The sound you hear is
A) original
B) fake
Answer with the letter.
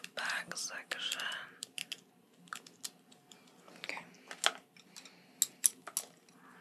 A